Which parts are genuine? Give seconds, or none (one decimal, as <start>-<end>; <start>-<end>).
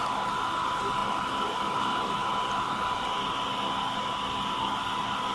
0.0-5.3